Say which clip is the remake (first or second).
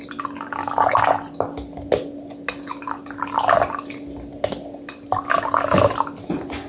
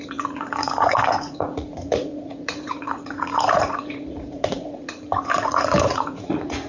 second